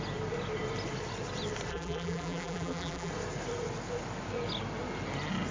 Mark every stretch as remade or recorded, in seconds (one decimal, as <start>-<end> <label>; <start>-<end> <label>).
0.0-1.7 recorded; 1.7-3.1 remade; 3.1-5.5 recorded